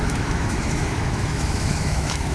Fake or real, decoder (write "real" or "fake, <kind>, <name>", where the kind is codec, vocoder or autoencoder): fake, autoencoder, DAC-VAE